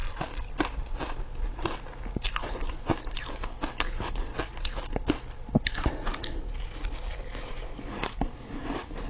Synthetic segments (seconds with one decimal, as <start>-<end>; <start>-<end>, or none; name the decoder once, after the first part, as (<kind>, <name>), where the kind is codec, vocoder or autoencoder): 3.3-4.3 (codec, DAC); 7.9-9.1